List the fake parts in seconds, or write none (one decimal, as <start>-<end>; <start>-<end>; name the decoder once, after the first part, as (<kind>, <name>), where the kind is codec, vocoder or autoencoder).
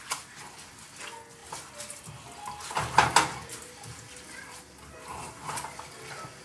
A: none